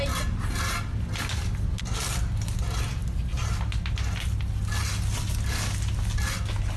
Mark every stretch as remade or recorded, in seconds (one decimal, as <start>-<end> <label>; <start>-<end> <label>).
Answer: 0.0-3.0 recorded; 3.0-3.5 remade; 3.5-6.8 recorded